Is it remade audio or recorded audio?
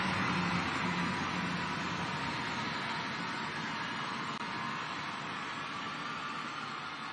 recorded